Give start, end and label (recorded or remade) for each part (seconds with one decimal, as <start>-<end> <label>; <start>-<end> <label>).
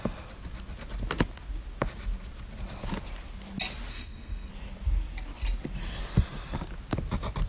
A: 0.0-3.9 recorded; 3.9-4.5 remade; 4.5-7.5 recorded